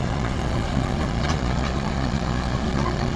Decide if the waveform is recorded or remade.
remade